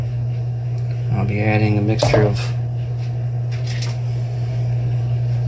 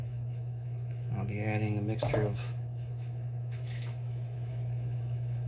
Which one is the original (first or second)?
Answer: first